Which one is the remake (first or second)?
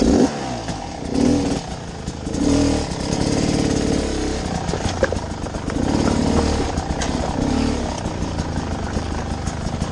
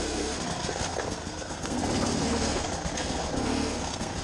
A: second